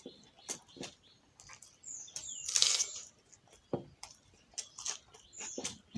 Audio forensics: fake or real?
real